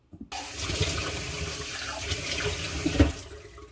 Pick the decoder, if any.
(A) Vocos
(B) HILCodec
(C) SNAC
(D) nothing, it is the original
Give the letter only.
D